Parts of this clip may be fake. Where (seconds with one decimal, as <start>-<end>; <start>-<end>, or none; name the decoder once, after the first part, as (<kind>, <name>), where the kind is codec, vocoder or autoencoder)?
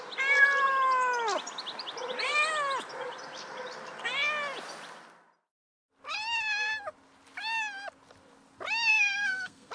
8.9-9.7 (codec, SNAC)